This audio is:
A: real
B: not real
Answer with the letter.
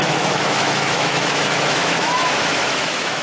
B